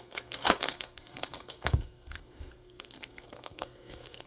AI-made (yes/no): yes